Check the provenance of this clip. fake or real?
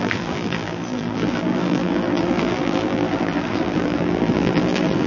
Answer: fake